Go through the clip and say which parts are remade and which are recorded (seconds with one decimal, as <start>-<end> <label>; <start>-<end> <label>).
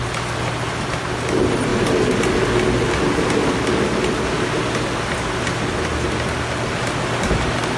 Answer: 0.0-7.8 recorded